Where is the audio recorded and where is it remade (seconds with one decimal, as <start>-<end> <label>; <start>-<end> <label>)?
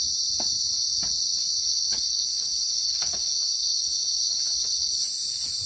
0.0-1.6 recorded; 1.6-5.0 remade; 5.0-5.7 recorded